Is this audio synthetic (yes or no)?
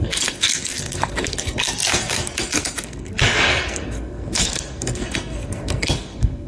yes